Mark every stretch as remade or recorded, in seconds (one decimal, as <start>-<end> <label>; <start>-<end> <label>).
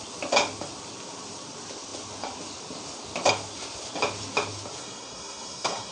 0.0-4.8 recorded; 4.8-5.9 remade